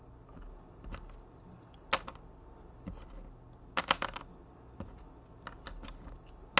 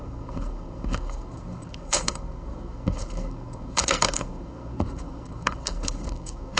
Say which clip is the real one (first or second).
first